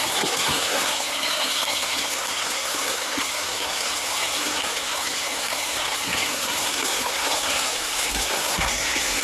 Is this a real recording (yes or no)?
no